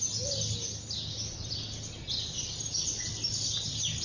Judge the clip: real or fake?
real